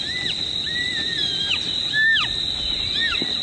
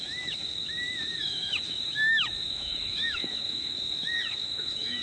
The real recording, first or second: first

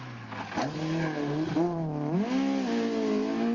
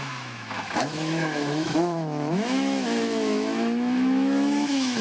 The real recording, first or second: first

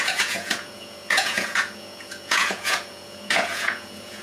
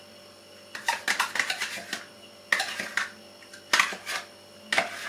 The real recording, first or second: second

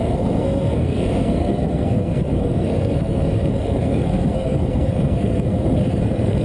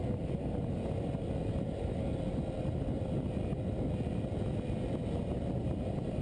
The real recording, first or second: second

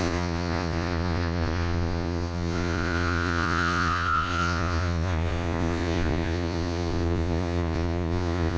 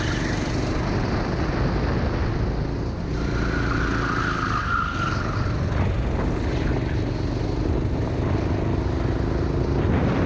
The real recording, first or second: second